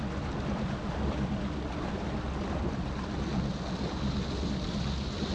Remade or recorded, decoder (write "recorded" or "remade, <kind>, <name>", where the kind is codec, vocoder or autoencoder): recorded